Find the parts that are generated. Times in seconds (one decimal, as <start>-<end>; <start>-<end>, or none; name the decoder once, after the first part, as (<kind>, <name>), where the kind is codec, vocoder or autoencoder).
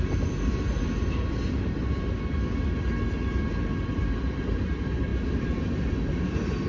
none